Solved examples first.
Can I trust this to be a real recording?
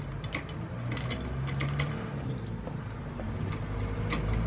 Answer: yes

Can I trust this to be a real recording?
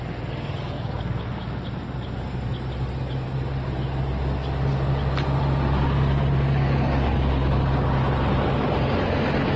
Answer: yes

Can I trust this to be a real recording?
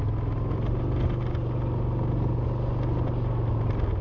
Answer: yes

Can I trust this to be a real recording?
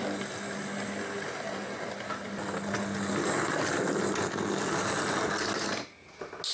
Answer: yes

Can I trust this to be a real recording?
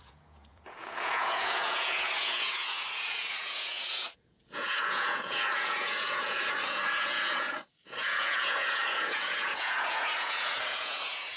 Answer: no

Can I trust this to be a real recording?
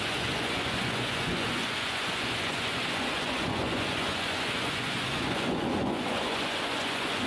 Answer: no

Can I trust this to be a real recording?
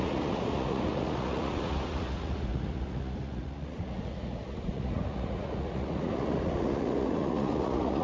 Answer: no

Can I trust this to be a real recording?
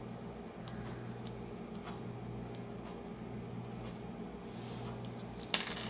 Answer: yes